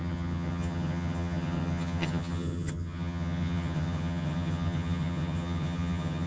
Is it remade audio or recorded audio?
remade